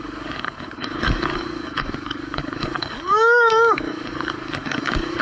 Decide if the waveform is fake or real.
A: fake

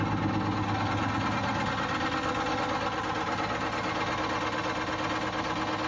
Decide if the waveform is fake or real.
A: real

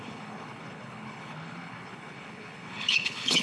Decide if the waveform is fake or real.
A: fake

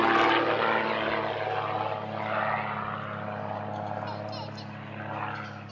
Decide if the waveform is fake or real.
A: real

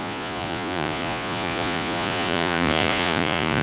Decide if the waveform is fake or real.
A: fake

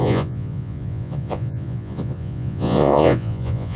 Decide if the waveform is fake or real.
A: fake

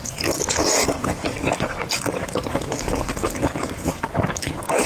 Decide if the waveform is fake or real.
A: fake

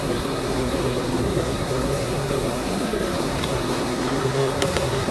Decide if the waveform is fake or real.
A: fake